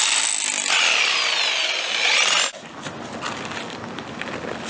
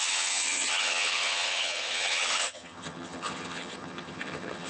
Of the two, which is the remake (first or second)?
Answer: second